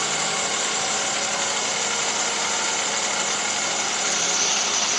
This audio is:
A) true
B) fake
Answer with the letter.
A